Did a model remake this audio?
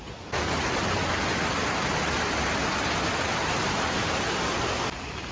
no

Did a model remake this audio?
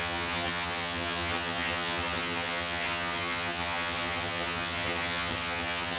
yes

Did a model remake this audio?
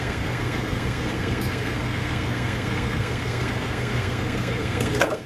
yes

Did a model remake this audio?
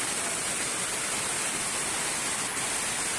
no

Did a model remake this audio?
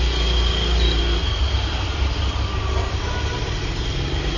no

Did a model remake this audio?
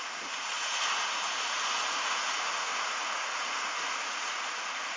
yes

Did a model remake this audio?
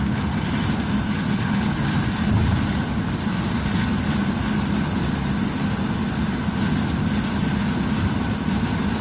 no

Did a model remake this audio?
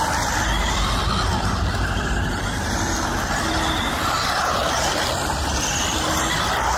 no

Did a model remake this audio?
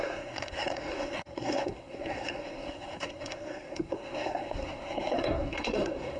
yes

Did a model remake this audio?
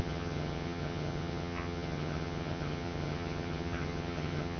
yes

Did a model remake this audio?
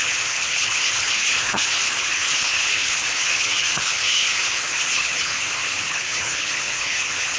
yes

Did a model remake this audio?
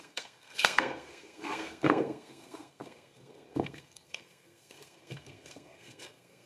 yes